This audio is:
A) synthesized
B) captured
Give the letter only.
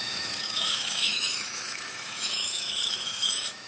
A